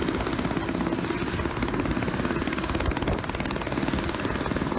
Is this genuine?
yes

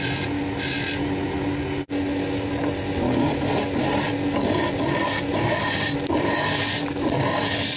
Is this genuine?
yes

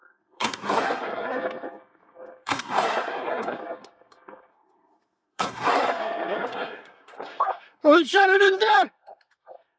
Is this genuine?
no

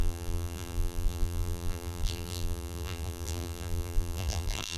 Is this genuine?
no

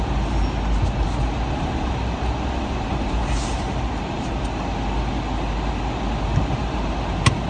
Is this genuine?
yes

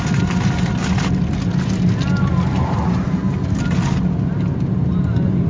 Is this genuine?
yes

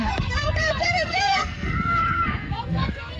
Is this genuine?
no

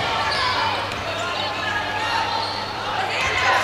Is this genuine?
no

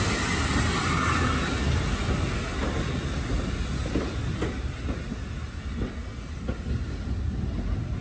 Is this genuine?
yes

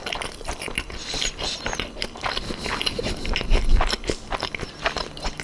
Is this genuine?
yes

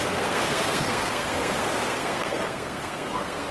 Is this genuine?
no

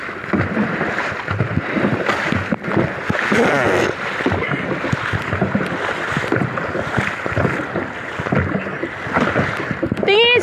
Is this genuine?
yes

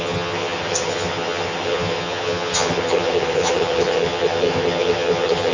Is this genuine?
no